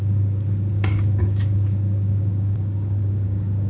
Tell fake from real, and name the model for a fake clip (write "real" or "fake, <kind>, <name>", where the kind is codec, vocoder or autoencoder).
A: fake, codec, DAC